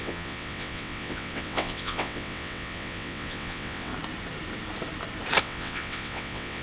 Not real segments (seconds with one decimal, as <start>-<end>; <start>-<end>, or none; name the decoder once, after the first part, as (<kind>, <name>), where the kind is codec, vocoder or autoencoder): 0.0-3.9 (vocoder, WaveNeXt); 5.4-6.6